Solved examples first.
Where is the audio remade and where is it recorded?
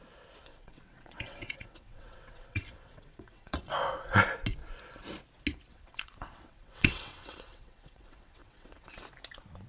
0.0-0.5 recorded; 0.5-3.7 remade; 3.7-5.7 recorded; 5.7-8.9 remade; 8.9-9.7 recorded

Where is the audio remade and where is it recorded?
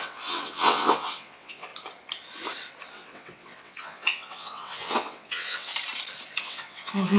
0.0-1.7 remade; 1.7-2.9 recorded; 2.9-5.7 remade; 5.7-6.4 recorded; 6.4-7.2 remade